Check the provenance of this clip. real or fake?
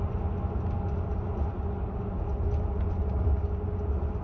real